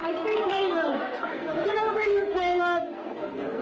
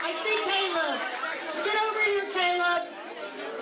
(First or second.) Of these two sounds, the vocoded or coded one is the first